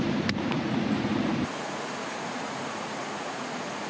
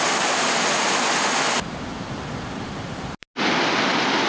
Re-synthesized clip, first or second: first